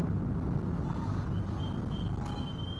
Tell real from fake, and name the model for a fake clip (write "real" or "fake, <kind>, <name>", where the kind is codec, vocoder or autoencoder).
real